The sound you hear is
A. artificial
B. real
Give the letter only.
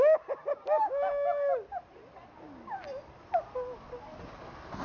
B